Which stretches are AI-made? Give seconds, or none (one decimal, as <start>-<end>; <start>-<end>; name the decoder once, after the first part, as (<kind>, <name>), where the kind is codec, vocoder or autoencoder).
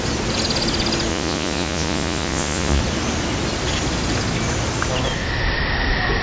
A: 1.1-2.8 (vocoder, Vocos)